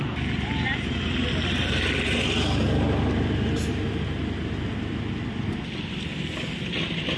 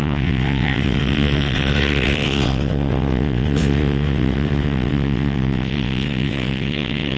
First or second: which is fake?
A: second